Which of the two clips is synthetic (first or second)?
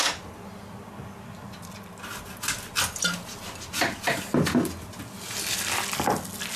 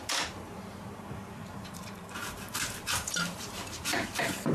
second